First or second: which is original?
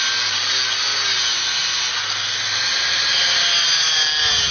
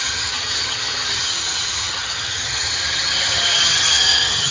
first